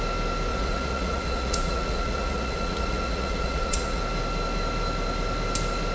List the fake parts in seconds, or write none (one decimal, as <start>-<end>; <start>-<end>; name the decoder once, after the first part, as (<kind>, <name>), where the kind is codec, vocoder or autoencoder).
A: 0.5-4.0 (vocoder, Vocos)